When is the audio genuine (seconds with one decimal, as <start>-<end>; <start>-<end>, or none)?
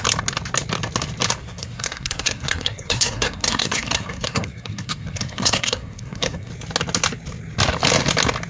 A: 0.0-1.4; 6.5-8.5